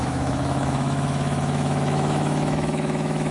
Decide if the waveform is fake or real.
fake